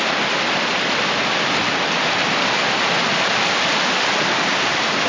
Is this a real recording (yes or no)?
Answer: no